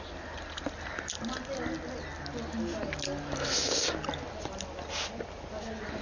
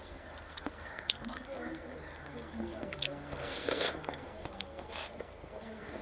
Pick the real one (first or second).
first